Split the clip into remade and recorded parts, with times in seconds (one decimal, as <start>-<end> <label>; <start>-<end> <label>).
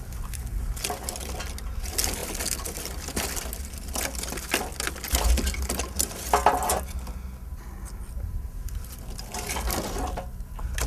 0.0-10.9 recorded